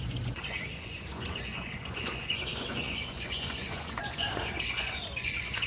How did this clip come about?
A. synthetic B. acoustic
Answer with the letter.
A